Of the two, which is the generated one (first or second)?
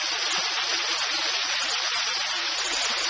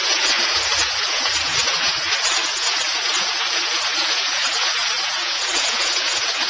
second